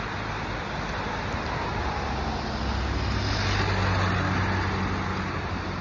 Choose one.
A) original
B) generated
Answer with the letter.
A